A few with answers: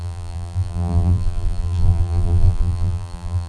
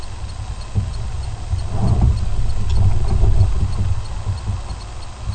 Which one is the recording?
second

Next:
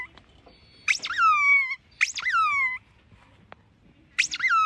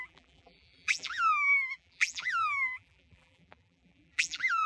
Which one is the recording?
first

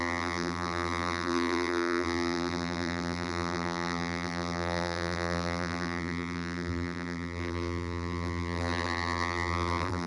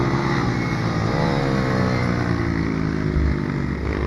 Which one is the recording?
second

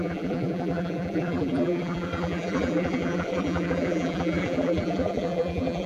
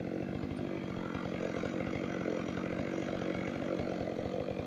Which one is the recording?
second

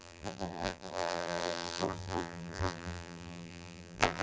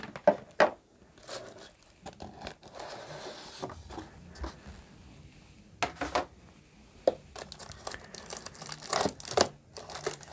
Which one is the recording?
second